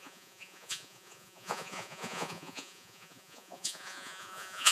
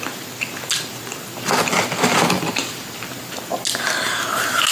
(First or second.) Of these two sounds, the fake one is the first